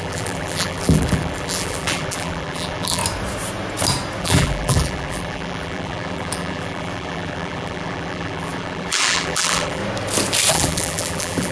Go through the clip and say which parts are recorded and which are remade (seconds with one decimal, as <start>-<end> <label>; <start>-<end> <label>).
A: 0.0-3.0 remade; 3.0-4.2 recorded; 4.2-9.8 remade; 9.8-10.5 recorded; 10.5-11.5 remade